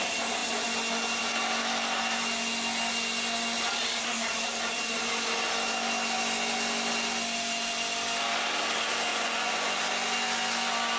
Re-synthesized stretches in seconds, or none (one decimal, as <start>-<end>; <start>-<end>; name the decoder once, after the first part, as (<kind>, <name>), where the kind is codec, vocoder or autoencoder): 9.1-9.8 (vocoder, Vocos)